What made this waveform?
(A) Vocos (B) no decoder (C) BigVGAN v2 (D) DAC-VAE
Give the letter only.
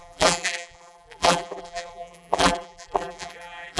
C